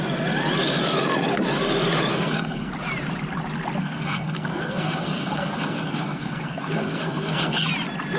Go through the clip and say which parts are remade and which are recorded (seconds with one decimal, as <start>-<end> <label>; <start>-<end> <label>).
0.0-2.1 recorded; 2.1-2.7 remade; 2.7-3.8 recorded; 3.8-7.7 remade; 7.7-8.2 recorded